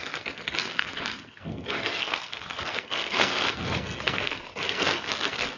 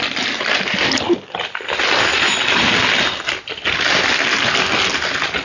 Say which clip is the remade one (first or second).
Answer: first